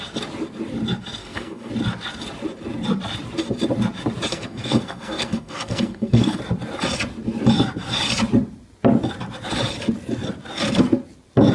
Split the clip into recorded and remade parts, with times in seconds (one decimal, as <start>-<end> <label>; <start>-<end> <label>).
0.0-1.2 recorded; 1.2-1.7 remade; 1.7-4.3 recorded; 4.3-6.4 remade; 6.4-11.5 recorded

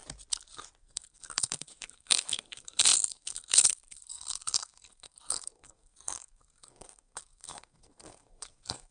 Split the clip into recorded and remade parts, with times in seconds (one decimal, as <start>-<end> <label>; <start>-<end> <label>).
0.0-0.8 recorded; 0.8-8.9 remade

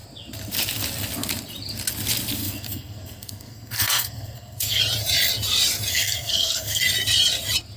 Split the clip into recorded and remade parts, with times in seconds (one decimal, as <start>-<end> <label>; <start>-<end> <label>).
0.0-2.4 recorded; 2.4-4.8 remade; 4.8-5.9 recorded; 5.9-6.8 remade; 6.8-7.8 recorded

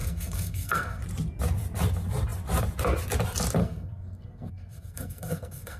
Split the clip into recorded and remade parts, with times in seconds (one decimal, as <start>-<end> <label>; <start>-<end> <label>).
0.0-1.0 remade; 1.0-3.6 recorded; 3.6-5.8 remade

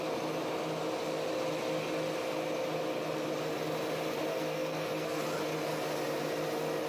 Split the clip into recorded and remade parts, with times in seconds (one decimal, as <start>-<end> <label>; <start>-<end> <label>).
0.0-4.3 recorded; 4.3-5.2 remade; 5.2-6.9 recorded

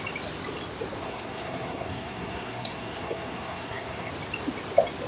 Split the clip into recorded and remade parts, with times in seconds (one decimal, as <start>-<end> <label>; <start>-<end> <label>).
0.0-1.0 recorded; 1.0-4.1 remade; 4.1-5.1 recorded

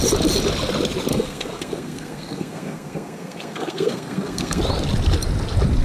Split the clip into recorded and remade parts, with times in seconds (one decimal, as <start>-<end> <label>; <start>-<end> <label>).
0.0-1.1 recorded; 1.1-4.6 remade; 4.6-5.8 recorded